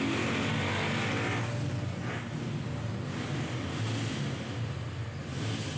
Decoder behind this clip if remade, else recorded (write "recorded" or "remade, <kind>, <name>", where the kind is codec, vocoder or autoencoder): recorded